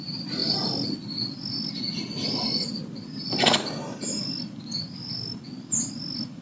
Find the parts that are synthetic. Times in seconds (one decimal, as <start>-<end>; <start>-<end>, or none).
none